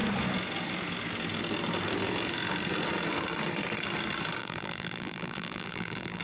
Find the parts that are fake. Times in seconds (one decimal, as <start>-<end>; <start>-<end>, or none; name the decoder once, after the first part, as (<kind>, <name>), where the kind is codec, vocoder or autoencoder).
4.4-6.2 (vocoder, BigVGAN v2)